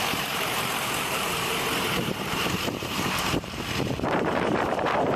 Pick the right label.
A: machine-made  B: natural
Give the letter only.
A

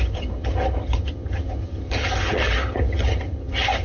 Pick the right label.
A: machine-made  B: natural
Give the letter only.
A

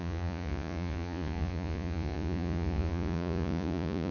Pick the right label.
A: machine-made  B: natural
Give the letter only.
A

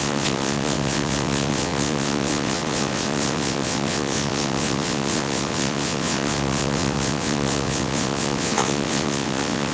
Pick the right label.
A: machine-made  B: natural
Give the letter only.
A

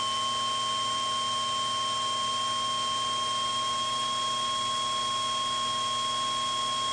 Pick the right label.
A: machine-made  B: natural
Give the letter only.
B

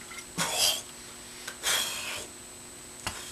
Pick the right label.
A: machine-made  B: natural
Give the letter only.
B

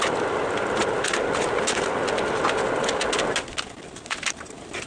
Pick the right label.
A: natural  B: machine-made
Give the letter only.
A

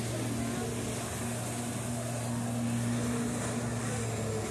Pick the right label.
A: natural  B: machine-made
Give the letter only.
A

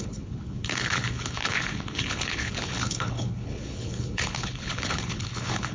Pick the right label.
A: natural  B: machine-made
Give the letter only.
B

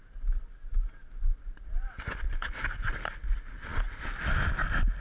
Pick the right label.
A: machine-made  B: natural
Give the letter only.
B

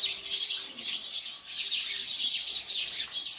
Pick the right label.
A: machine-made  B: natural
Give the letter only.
B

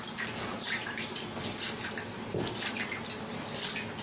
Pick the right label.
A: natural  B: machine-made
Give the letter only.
A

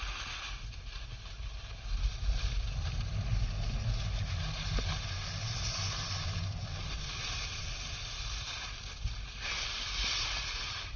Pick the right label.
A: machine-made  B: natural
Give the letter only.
B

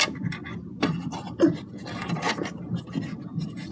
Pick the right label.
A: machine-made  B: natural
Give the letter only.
B